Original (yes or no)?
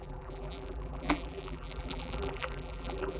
no